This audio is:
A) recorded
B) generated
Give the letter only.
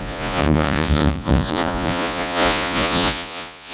B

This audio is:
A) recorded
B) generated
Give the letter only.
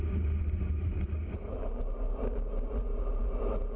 A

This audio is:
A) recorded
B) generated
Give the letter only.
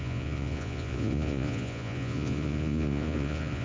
B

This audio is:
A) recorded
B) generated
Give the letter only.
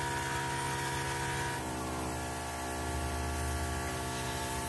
A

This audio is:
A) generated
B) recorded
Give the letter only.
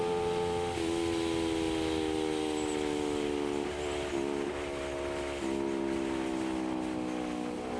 B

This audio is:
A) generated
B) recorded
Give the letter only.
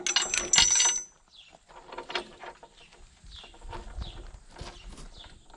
B